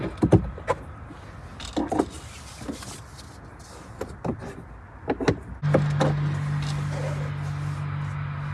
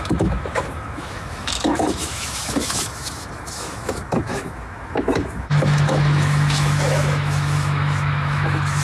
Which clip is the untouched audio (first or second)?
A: first